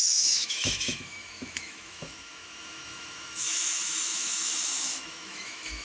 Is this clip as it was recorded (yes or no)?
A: no